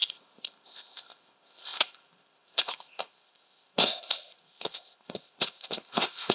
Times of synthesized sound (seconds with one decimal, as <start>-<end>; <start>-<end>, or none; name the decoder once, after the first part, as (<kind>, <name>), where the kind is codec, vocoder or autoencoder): 0.0-6.3 (codec, ZipCodec)

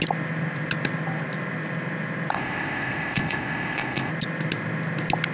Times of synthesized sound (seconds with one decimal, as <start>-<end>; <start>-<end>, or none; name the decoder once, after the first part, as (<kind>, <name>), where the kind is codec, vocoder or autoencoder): 2.3-4.1 (codec, ZipCodec)

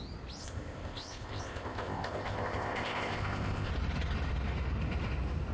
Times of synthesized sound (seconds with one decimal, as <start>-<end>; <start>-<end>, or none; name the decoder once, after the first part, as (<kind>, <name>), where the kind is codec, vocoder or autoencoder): 0.4-3.7 (codec, ZipCodec)

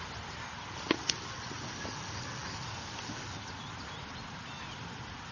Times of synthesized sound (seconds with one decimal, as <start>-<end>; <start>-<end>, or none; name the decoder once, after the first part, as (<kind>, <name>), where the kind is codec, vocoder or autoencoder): none

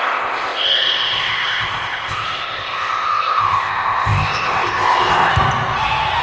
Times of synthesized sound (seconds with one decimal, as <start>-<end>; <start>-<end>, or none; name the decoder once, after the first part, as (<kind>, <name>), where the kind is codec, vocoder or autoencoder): 0.0-5.3 (codec, ZipCodec)